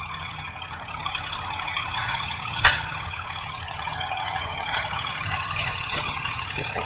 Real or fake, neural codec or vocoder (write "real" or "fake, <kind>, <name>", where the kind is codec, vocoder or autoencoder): fake, vocoder, HiFi-GAN